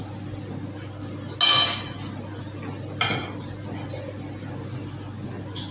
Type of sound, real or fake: real